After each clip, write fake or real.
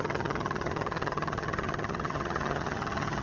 fake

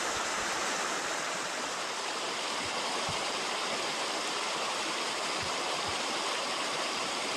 fake